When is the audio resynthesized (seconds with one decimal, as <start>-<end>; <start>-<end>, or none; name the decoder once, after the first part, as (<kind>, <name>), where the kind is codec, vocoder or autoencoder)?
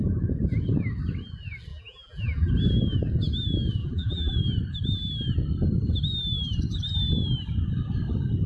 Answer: 1.7-2.5 (vocoder, BigVGAN v2); 3.8-4.3